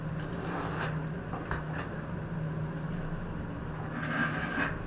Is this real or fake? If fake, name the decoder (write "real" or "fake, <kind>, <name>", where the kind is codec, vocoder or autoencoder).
real